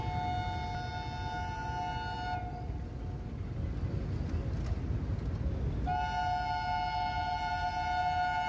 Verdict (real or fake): real